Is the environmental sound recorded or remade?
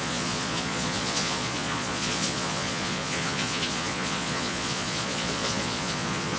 remade